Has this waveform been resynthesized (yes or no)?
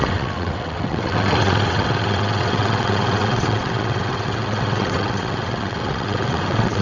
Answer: yes